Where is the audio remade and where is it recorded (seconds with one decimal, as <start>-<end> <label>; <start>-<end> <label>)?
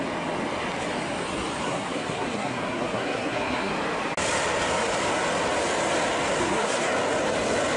0.0-1.6 recorded; 1.6-3.7 remade; 3.7-6.4 recorded; 6.4-6.9 remade; 6.9-7.8 recorded